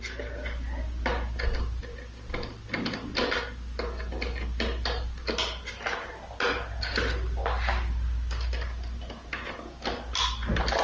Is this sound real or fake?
real